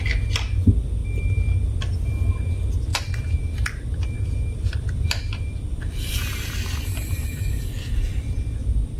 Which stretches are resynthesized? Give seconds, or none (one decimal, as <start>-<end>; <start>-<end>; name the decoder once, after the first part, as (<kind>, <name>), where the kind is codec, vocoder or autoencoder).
0.0-1.0 (vocoder, BigVGAN v2); 2.1-8.1